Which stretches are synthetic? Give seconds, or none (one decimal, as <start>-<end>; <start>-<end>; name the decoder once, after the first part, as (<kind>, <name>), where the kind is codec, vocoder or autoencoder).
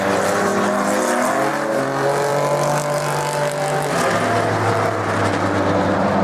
none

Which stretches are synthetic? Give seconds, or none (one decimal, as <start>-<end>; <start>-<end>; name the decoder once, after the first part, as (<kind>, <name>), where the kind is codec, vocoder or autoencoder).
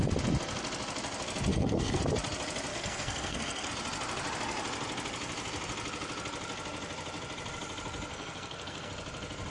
1.5-2.0 (codec, SNAC); 2.7-3.7; 8.1-8.9